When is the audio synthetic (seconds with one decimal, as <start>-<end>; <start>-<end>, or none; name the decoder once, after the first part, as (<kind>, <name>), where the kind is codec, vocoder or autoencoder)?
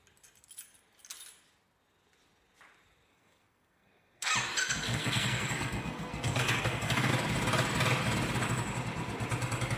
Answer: 3.1-4.3 (codec, SNAC); 4.9-7.1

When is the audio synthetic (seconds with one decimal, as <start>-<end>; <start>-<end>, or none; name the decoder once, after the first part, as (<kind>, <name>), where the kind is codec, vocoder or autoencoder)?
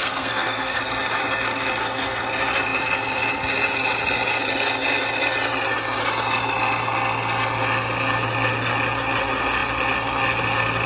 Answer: 0.0-0.8 (codec, SNAC)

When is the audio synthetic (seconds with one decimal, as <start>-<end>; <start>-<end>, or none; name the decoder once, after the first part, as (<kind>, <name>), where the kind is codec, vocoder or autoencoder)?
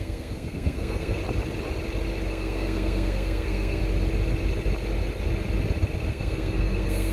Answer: 0.0-1.2 (codec, SNAC); 2.3-3.8; 6.1-7.1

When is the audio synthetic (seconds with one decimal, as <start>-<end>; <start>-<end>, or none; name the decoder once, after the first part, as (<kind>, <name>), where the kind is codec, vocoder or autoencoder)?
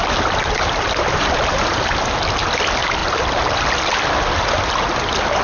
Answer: none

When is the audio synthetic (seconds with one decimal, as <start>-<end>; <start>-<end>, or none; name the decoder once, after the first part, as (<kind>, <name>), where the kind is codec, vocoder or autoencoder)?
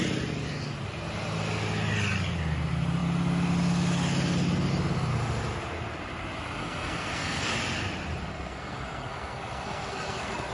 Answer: 6.6-7.5 (codec, SNAC); 8.3-10.5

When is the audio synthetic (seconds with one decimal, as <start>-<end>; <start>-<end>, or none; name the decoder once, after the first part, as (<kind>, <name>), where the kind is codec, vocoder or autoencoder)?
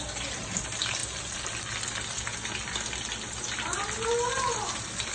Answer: none